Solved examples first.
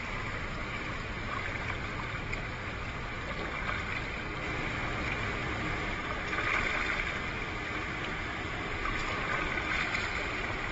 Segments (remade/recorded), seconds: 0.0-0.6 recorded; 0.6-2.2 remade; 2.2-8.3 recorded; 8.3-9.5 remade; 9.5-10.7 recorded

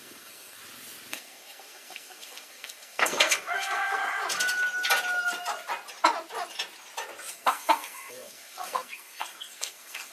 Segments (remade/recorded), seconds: 0.0-0.6 remade; 0.6-1.1 recorded; 1.1-4.0 remade; 4.0-7.3 recorded; 7.3-10.1 remade

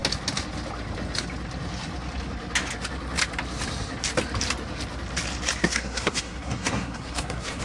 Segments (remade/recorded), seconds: 0.0-5.6 recorded; 5.6-7.6 remade

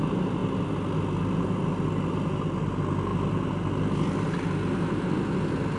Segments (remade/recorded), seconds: 0.0-5.8 recorded

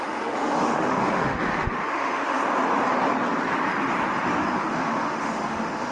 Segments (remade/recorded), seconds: 0.0-2.4 remade; 2.4-4.5 recorded; 4.5-5.9 remade